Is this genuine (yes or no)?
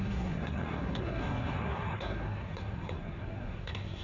no